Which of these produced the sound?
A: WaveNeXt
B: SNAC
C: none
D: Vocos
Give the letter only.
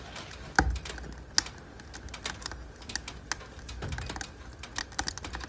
C